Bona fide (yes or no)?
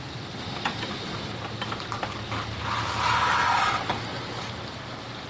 yes